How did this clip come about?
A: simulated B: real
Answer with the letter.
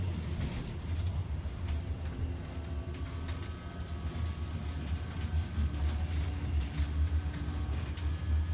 B